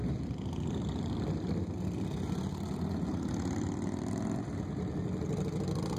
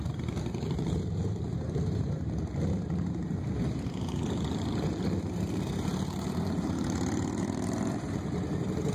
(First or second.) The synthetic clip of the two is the second